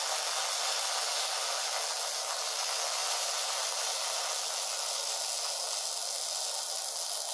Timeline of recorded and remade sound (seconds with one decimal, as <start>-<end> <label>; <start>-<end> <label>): 0.0-7.3 recorded